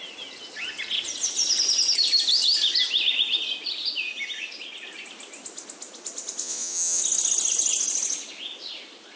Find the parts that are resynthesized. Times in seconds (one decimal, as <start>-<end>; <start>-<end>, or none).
6.4-7.0